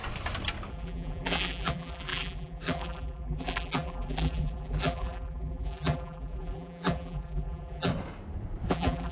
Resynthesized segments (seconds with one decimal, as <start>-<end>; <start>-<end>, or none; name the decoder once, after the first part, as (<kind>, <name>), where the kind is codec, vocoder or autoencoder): 0.7-7.9 (vocoder, BigVGAN v2); 8.7-9.1